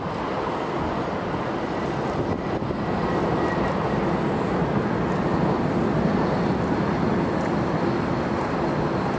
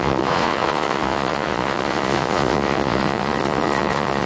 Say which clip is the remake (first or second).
second